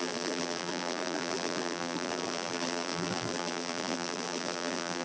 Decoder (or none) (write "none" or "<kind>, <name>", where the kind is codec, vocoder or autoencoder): vocoder, BigVGAN v2